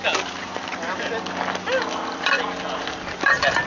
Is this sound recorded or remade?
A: recorded